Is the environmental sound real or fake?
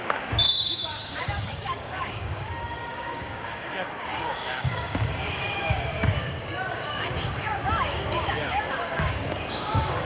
fake